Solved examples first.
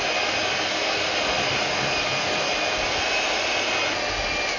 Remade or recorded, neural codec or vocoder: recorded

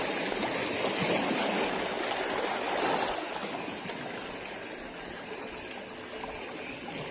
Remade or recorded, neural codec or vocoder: recorded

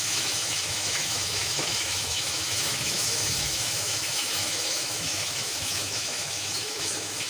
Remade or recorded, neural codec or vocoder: remade, autoencoder, DAC-VAE